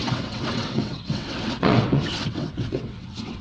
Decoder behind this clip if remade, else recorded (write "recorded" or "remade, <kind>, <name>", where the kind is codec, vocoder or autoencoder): remade, vocoder, WaveNeXt